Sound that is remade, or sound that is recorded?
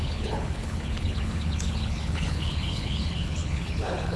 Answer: remade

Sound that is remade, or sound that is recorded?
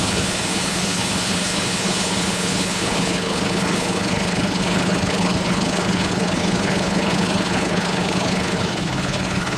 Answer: remade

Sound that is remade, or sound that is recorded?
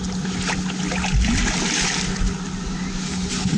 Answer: recorded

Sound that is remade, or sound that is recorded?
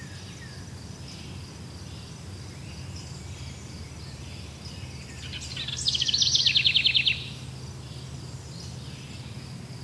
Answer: recorded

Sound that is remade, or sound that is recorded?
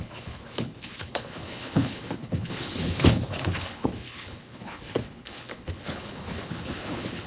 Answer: remade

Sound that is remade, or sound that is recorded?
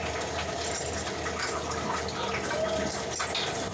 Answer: recorded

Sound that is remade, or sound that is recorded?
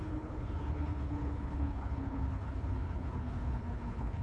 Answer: remade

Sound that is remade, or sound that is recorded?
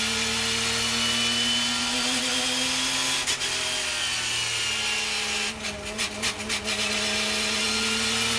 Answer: recorded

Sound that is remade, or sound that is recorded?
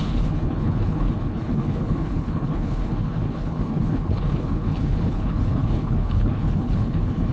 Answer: remade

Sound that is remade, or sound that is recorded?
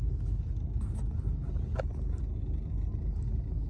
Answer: recorded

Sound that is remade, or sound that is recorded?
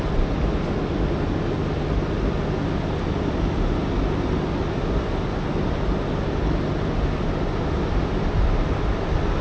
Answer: recorded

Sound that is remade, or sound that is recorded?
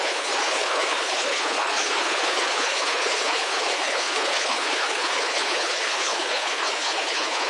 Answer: remade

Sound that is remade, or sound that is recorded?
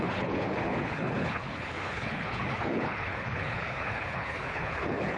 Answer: remade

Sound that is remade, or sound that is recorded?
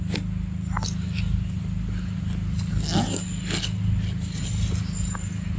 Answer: recorded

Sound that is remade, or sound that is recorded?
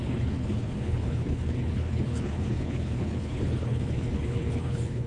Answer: remade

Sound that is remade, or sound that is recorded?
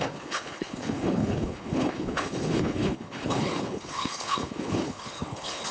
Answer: remade